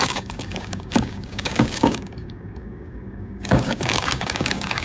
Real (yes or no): no